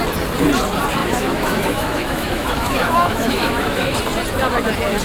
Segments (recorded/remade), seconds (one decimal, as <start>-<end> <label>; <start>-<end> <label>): 0.0-1.0 recorded; 1.0-4.0 remade; 4.0-5.0 recorded